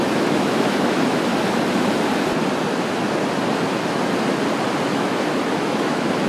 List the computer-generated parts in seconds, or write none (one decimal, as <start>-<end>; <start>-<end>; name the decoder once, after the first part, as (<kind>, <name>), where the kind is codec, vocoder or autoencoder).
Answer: 0.0-1.3 (autoencoder, DAC-VAE); 4.9-6.3